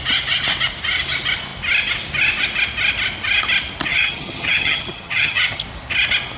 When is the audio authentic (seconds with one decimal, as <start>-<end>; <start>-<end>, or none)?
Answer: 0.0-3.9; 5.6-6.4